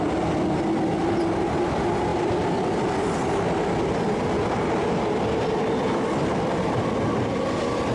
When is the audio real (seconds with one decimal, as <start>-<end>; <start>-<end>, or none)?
0.0-7.9